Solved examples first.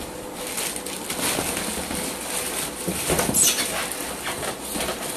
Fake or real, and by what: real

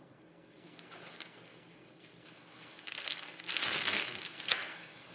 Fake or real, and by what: fake, codec, SNAC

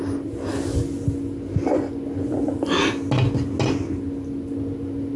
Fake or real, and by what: real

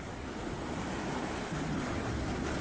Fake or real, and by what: fake, vocoder, BigVGAN v2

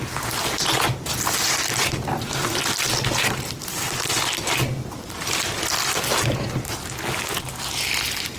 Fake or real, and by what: real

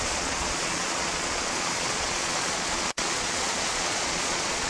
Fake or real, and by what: fake, vocoder, Vocos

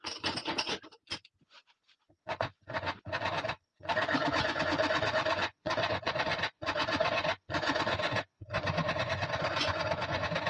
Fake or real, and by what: fake, vocoder, Vocos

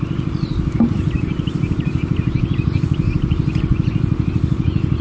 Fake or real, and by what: real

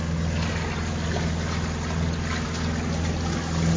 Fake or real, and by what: real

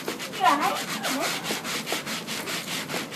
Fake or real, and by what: real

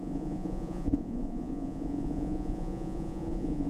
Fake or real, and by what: fake, vocoder, Vocos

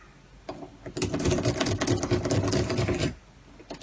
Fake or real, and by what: real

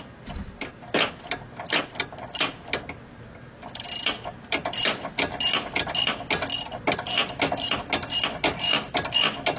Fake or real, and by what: real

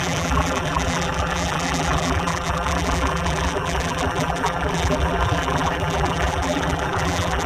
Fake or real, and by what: fake, vocoder, BigVGAN v2